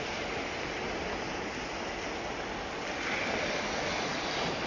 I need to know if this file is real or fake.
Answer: real